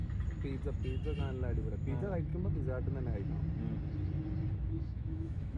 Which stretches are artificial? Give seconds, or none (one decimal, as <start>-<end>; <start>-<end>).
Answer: 1.2-2.3; 4.5-5.6